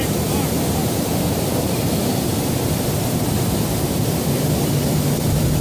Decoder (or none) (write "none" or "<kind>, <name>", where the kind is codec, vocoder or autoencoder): vocoder, BigVGAN v2